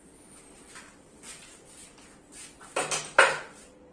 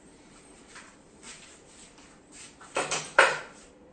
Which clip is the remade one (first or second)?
second